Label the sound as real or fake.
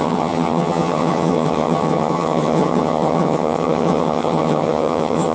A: fake